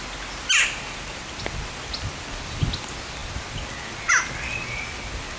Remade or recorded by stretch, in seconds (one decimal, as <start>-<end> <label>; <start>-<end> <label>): 0.0-5.4 recorded